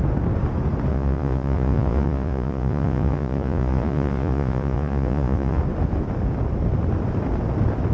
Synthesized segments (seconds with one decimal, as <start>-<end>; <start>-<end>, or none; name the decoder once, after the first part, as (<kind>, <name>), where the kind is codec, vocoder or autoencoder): 0.9-5.6 (vocoder, Vocos)